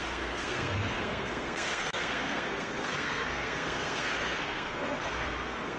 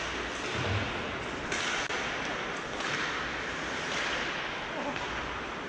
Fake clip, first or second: first